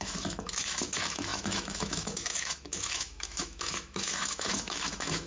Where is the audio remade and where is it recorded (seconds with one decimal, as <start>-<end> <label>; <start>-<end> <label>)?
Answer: 0.0-5.3 remade